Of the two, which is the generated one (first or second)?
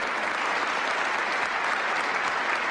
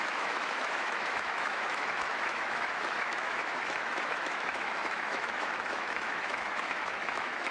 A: second